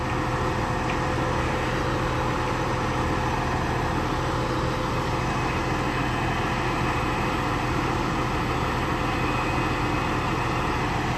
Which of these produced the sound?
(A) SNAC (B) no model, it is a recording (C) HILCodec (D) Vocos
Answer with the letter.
B